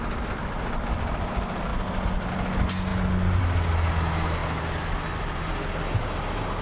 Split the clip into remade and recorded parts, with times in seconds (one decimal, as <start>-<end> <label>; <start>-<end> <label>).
0.0-6.6 recorded

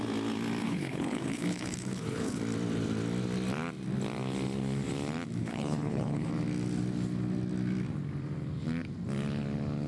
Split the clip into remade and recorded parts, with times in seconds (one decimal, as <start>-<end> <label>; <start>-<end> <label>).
0.0-0.6 recorded; 0.6-2.4 remade; 2.4-5.4 recorded; 5.4-6.3 remade; 6.3-9.9 recorded

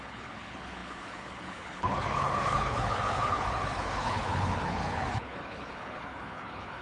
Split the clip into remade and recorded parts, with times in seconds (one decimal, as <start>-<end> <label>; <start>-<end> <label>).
0.0-6.8 remade

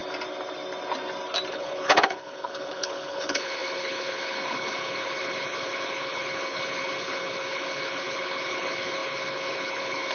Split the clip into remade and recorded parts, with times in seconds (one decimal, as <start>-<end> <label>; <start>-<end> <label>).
0.0-1.5 recorded; 1.5-10.1 remade